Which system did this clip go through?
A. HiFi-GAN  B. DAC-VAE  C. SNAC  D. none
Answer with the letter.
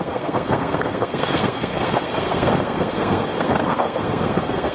C